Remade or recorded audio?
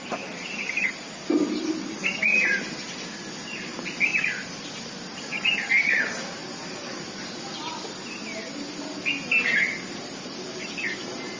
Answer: recorded